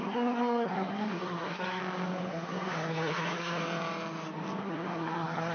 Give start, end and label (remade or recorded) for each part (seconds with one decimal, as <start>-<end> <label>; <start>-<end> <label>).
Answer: 0.0-1.8 remade; 1.8-2.3 recorded; 2.3-3.6 remade; 3.6-4.6 recorded; 4.6-5.5 remade